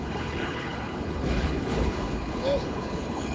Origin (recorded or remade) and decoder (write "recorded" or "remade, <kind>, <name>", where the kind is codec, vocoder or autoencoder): remade, codec, HILCodec